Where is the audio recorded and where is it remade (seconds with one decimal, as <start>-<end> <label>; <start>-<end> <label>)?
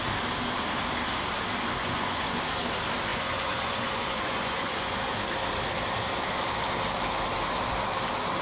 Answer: 0.0-1.8 recorded; 1.8-2.4 remade; 2.4-3.1 recorded; 3.1-5.0 remade; 5.0-8.4 recorded